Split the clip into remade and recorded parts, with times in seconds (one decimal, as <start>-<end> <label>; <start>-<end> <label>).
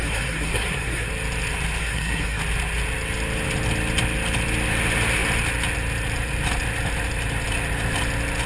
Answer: 0.0-1.1 remade; 1.1-1.8 recorded; 1.8-2.4 remade; 2.4-8.5 recorded